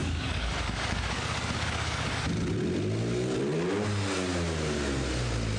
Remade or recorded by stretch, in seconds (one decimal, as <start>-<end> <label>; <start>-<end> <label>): 0.0-2.2 remade; 2.2-5.6 recorded